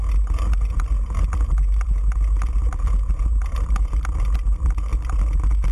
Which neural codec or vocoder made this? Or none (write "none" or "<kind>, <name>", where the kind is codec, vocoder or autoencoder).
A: none